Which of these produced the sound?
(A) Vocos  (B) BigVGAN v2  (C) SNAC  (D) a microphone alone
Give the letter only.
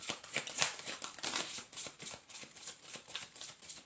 B